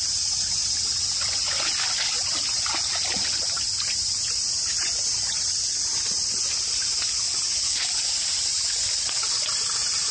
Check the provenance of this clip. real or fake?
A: real